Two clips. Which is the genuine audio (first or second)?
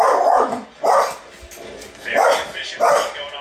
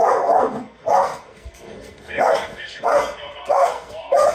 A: first